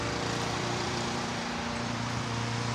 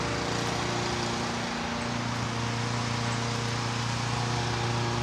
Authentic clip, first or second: second